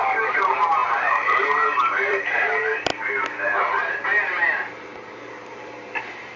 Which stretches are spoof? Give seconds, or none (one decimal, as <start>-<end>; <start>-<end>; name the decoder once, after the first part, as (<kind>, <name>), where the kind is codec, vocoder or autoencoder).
0.0-2.9 (vocoder, BigVGAN v2); 3.9-6.4